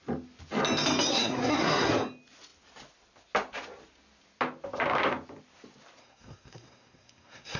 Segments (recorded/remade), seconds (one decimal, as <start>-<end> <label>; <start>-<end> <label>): 0.0-1.1 recorded; 1.1-1.9 remade; 1.9-6.0 recorded; 6.0-7.6 remade